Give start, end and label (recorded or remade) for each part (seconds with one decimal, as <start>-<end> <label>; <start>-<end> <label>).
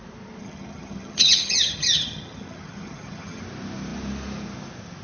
0.0-0.4 recorded; 0.4-3.4 remade; 3.4-5.0 recorded